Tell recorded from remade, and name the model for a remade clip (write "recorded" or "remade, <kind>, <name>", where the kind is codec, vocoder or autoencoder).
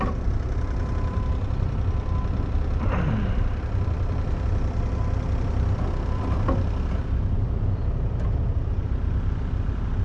remade, vocoder, BigVGAN v2